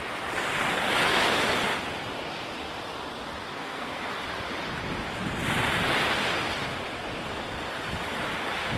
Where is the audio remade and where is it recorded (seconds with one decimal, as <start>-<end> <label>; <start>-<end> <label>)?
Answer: 0.0-3.5 recorded; 3.5-4.1 remade; 4.1-8.8 recorded